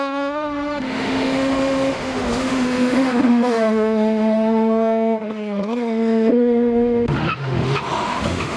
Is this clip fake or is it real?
fake